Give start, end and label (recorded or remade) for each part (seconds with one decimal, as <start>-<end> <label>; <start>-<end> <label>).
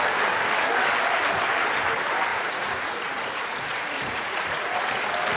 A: 0.0-2.3 recorded; 2.3-5.0 remade; 5.0-5.4 recorded